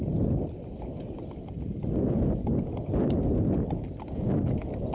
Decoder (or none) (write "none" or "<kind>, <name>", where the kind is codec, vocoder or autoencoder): none